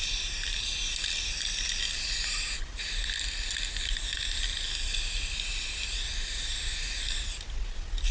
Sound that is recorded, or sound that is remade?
recorded